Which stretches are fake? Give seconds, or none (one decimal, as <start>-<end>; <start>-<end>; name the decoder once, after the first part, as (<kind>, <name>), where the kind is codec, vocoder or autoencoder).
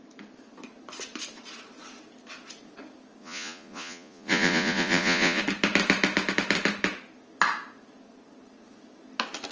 3.2-5.4 (vocoder, Vocos)